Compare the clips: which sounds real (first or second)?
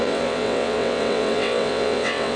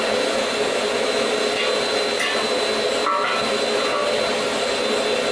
second